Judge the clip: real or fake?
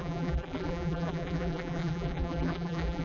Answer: fake